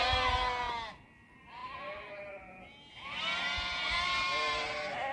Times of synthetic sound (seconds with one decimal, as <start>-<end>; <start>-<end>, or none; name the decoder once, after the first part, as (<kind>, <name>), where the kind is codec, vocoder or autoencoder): none